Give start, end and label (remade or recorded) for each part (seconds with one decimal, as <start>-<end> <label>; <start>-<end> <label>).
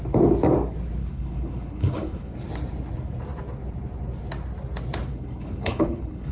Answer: 0.0-1.0 recorded; 1.0-2.3 remade; 2.3-5.1 recorded; 5.1-6.3 remade